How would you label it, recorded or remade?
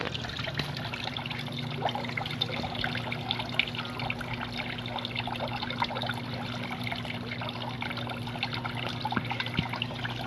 recorded